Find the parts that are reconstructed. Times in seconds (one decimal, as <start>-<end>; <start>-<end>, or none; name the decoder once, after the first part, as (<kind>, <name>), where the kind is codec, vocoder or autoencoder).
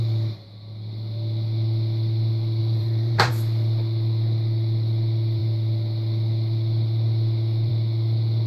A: 2.6-3.3 (vocoder, BigVGAN v2)